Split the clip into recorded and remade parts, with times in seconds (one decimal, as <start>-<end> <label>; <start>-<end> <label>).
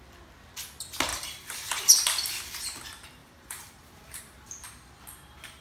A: 0.0-1.1 recorded; 1.1-1.7 remade; 1.7-3.2 recorded; 3.2-4.2 remade; 4.2-5.6 recorded